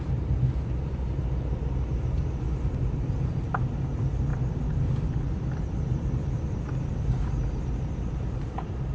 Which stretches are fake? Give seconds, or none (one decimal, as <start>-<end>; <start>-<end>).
0.0-1.2; 3.5-4.3; 8.2-8.9